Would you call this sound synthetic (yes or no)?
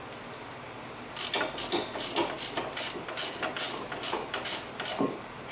no